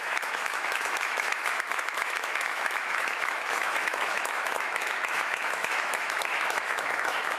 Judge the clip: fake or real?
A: fake